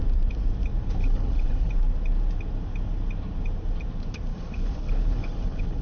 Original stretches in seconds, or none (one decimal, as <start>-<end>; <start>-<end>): 0.0-1.0; 1.7-4.3